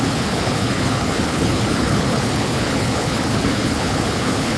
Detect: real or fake fake